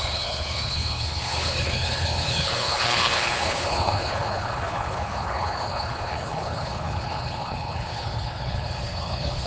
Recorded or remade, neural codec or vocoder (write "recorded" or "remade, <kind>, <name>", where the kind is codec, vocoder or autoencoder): remade, codec, HILCodec